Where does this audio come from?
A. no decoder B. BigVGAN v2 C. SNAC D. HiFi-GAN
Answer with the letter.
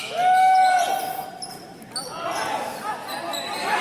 A